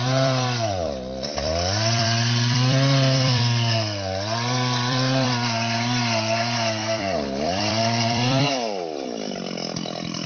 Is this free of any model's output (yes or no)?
no